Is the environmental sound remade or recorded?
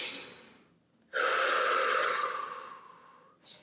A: recorded